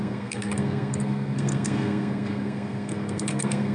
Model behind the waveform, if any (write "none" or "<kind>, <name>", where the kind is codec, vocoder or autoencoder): codec, SNAC